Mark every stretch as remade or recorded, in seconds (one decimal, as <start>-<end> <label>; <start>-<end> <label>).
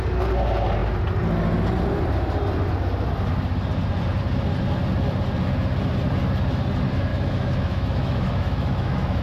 0.0-7.1 recorded; 7.1-9.2 remade